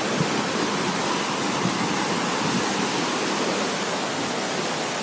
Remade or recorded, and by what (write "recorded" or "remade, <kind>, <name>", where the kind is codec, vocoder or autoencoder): recorded